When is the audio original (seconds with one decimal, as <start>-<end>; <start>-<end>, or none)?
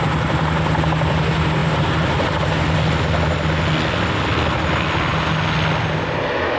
0.0-1.6; 2.4-6.6